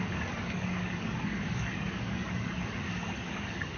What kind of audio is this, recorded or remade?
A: remade